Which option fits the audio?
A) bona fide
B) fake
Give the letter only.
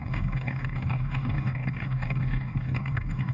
B